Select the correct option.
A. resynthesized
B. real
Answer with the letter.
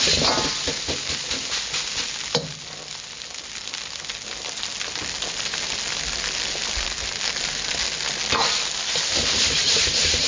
B